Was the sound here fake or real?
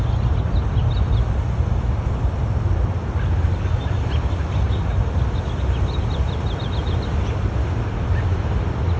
real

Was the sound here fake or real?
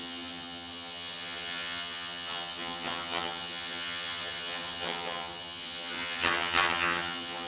fake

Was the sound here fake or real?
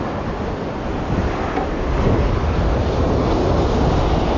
real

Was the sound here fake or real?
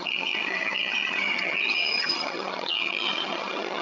fake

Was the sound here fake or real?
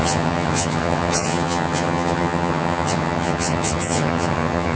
fake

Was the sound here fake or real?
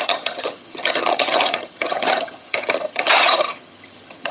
fake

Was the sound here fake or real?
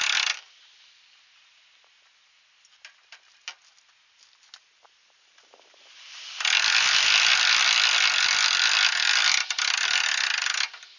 real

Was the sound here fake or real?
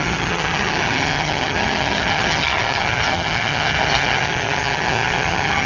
fake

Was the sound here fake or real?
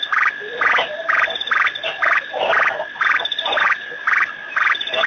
real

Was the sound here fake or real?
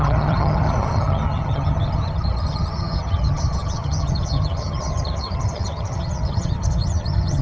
fake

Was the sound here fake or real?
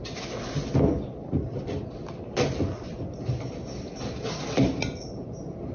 real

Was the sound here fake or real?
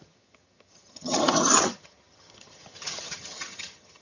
fake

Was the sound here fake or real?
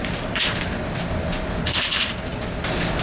real